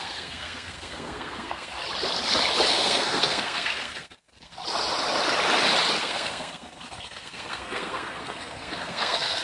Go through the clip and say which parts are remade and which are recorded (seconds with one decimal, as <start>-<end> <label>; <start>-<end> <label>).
0.0-1.8 remade; 1.8-2.7 recorded; 2.7-4.6 remade; 4.6-6.0 recorded; 6.0-9.4 remade